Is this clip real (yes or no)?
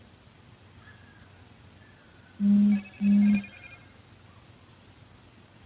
yes